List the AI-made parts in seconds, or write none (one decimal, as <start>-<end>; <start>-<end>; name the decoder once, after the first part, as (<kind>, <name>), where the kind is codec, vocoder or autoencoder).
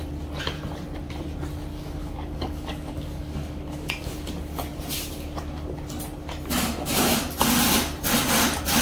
1.7-4.1 (codec, DAC)